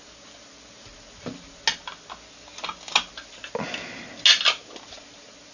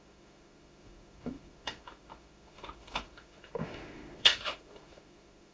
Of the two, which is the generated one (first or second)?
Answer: second